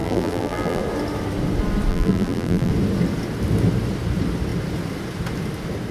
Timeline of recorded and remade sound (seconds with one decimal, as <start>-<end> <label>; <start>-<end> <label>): 0.0-0.8 remade; 0.8-1.9 recorded; 1.9-2.7 remade; 2.7-5.9 recorded